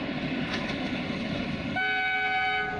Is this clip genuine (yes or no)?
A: yes